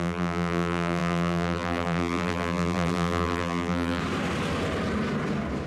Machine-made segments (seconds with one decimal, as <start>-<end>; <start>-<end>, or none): 0.0-4.0